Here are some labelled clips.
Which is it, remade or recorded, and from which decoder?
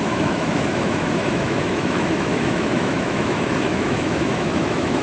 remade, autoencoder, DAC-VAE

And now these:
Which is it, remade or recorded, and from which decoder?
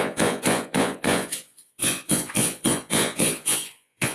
remade, vocoder, Vocos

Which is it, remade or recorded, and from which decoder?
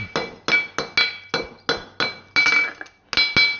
recorded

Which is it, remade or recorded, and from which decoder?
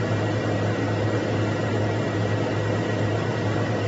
recorded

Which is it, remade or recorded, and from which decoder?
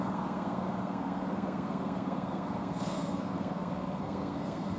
remade, codec, SNAC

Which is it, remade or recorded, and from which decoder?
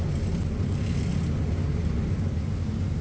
recorded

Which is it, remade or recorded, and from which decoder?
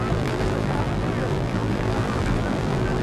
remade, vocoder, BigVGAN v2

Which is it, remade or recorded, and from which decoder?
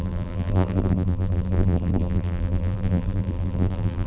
remade, vocoder, BigVGAN v2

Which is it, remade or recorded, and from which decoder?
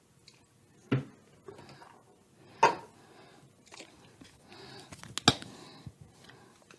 recorded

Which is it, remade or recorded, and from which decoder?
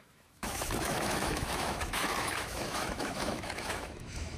remade, autoencoder, DAC-VAE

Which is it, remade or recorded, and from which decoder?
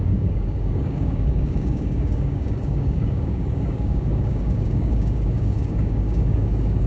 remade, codec, DAC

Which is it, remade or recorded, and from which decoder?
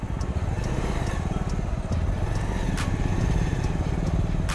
recorded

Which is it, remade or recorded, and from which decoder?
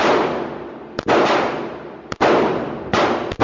recorded